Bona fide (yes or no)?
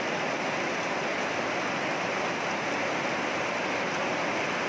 yes